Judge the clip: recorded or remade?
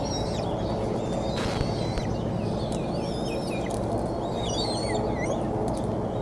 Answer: recorded